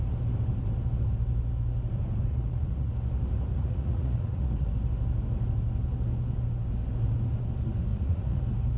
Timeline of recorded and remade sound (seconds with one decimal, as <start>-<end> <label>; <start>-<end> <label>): 0.0-2.3 recorded; 2.3-2.9 remade; 2.9-3.5 recorded; 3.5-4.7 remade; 4.7-7.9 recorded; 7.9-8.4 remade; 8.4-8.8 recorded